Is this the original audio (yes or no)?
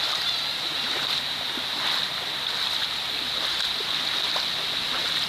yes